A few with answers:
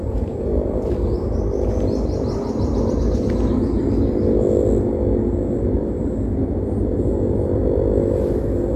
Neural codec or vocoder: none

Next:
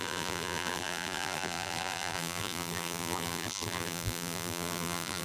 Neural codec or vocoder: vocoder, BigVGAN v2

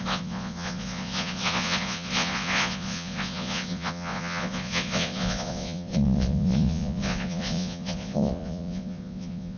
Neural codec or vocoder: vocoder, Vocos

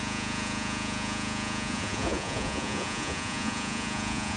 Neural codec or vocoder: vocoder, Vocos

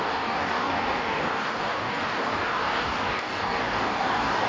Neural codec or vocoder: codec, DAC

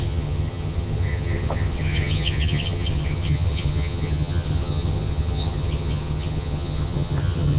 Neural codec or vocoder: vocoder, HiFi-GAN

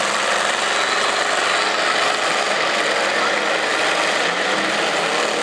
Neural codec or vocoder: none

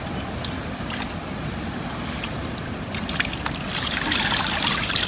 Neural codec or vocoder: none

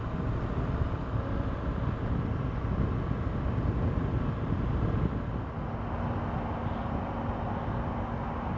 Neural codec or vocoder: none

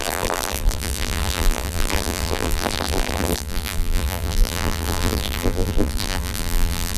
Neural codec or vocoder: vocoder, BigVGAN v2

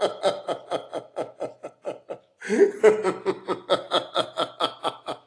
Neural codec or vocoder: none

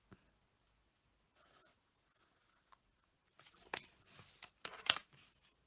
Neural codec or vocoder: none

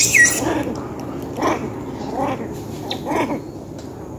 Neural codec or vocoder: none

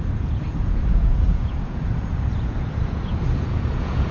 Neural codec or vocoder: vocoder, Vocos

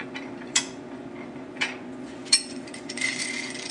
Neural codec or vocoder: vocoder, Vocos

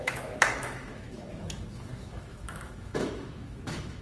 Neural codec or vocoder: autoencoder, DAC-VAE